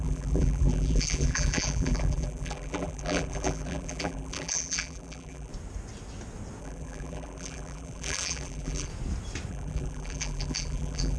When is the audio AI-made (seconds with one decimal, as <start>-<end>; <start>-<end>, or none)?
0.0-5.5; 6.6-8.9; 9.5-11.2